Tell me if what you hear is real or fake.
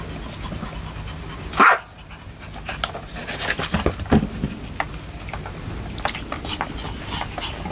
real